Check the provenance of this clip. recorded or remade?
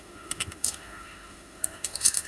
remade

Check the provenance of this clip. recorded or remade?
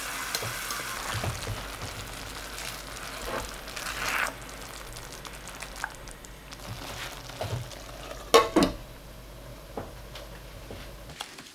recorded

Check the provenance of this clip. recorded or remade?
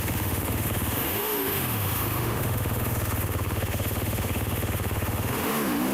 remade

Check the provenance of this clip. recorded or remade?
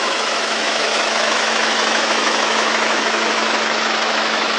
remade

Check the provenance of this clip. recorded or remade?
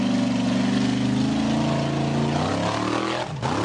recorded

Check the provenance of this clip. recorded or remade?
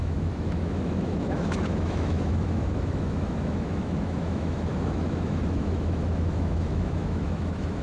remade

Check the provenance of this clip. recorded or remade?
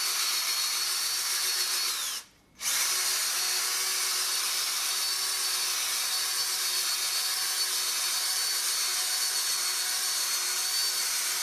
recorded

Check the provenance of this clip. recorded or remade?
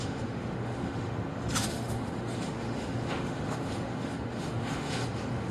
remade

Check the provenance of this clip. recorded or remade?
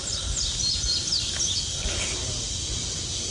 recorded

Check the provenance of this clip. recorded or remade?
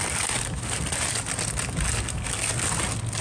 recorded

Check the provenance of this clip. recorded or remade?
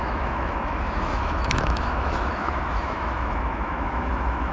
remade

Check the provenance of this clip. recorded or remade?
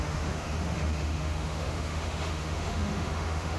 remade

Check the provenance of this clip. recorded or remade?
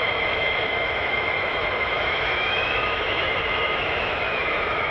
remade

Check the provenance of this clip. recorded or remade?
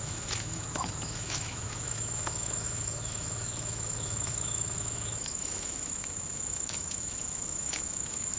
remade